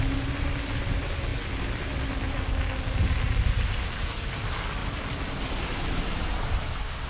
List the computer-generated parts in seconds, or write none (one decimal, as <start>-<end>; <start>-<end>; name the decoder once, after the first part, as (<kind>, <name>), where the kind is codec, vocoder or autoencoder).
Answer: none